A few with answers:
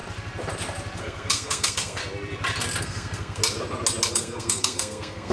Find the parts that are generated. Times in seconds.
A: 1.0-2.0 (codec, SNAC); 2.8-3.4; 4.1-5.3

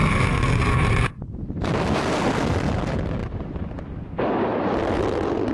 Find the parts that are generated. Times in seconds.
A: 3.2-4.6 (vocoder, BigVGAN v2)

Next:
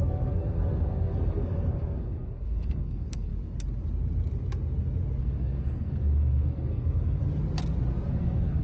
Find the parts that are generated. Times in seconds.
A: 0.0-3.3 (codec, SNAC); 5.2-7.2; 8.1-8.6

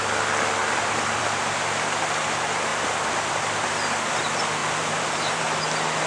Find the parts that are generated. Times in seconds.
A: 0.6-2.0 (vocoder, BigVGAN v2); 2.7-3.3; 4.6-5.4

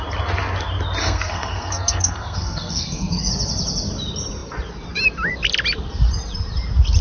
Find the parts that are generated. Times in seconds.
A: 1.0-3.3 (codec, SNAC)

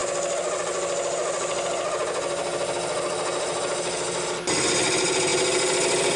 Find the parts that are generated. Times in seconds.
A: none

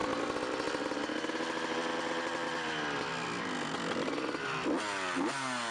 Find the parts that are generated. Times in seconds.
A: none